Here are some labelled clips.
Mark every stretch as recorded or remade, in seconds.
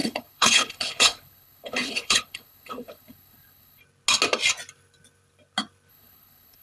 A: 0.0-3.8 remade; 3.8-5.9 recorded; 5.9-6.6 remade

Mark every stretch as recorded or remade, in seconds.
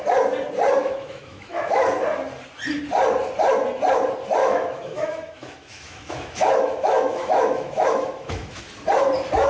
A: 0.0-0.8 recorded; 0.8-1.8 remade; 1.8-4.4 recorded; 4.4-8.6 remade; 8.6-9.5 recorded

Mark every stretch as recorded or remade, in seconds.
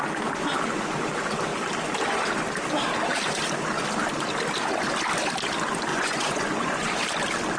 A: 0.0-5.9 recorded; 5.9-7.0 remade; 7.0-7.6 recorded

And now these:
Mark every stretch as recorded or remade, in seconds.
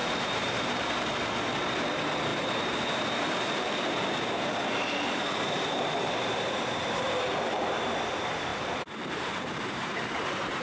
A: 0.0-1.5 remade; 1.5-2.3 recorded; 2.3-7.2 remade; 7.2-8.5 recorded; 8.5-10.6 remade